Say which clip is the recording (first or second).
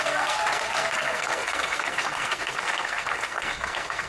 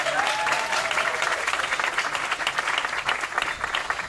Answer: second